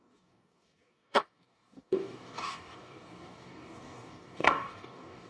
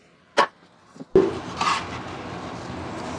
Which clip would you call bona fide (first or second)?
second